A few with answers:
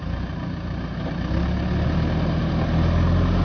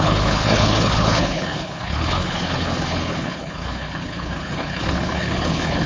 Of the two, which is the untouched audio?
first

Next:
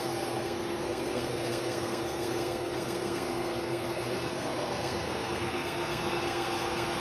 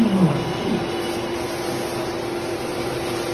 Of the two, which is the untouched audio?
second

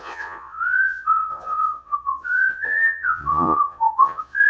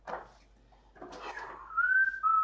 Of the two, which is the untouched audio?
second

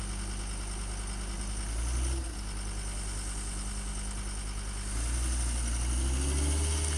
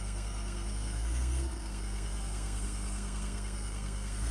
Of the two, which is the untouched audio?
first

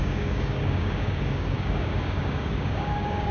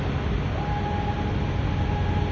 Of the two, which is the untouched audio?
second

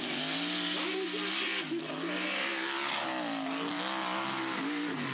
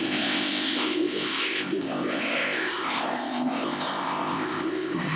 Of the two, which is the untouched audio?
first